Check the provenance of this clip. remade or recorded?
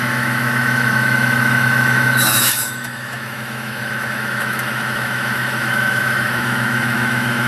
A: remade